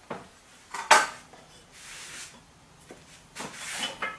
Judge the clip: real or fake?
real